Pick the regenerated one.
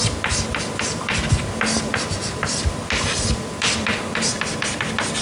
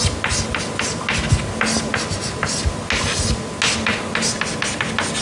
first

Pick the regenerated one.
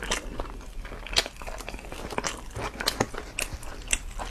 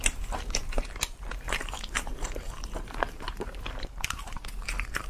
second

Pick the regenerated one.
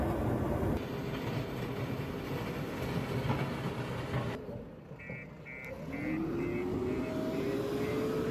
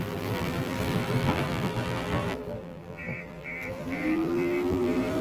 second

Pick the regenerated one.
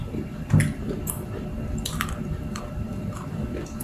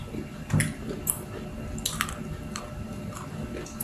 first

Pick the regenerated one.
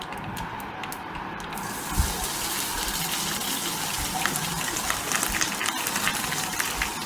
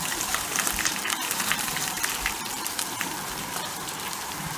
second